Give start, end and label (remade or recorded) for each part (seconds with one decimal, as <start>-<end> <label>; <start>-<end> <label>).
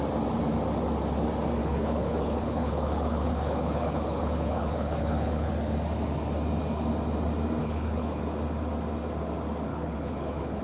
0.0-1.6 recorded; 1.6-5.5 remade; 5.5-7.6 recorded; 7.6-8.2 remade; 8.2-9.7 recorded; 9.7-10.6 remade